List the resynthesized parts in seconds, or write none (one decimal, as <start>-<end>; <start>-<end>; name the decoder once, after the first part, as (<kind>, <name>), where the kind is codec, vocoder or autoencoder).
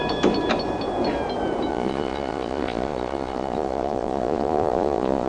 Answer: 1.7-5.3 (vocoder, Vocos)